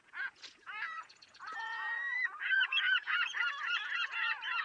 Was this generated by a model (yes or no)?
yes